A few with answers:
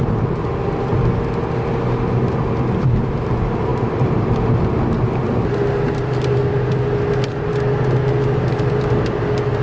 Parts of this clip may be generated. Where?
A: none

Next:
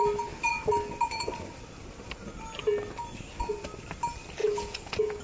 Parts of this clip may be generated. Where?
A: 4.4-5.2

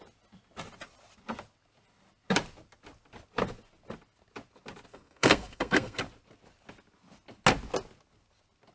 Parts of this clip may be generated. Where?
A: 4.9-6.0

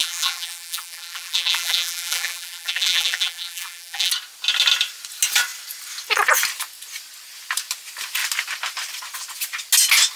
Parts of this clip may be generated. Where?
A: 0.0-4.1

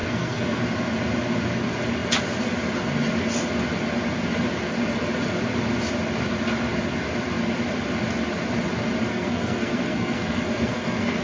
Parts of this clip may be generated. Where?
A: 0.0-0.6; 9.1-11.2